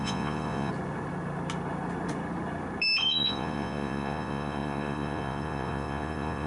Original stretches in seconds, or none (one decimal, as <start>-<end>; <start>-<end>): 0.7-3.0

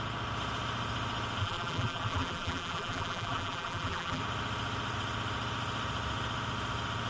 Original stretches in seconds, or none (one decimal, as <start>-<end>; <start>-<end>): 0.0-1.4; 4.2-7.1

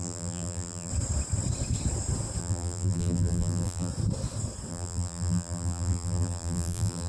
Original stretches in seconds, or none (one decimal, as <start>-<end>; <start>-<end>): 0.9-2.4; 3.9-4.7